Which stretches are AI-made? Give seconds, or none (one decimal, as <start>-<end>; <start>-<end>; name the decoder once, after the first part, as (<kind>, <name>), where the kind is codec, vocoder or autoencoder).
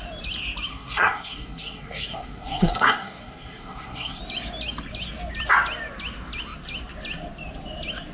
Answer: 0.7-4.2 (codec, SNAC)